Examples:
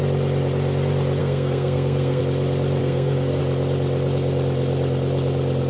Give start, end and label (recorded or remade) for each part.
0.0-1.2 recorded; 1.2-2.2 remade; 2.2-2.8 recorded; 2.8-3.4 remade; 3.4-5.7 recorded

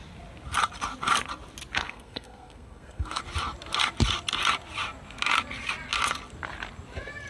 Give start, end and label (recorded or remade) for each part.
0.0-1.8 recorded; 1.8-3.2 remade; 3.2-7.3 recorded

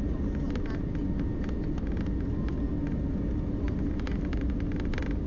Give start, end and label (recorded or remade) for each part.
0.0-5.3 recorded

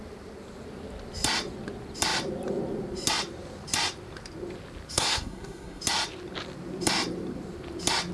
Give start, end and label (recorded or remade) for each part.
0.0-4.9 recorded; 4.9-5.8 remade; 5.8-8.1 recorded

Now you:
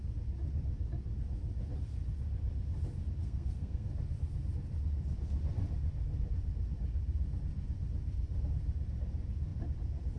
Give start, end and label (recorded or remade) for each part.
0.0-3.2 recorded; 3.2-3.9 remade; 3.9-10.2 recorded

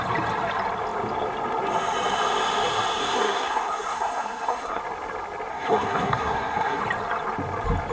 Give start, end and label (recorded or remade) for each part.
0.0-3.0 recorded; 3.0-4.8 remade; 4.8-5.5 recorded; 5.5-6.8 remade; 6.8-7.9 recorded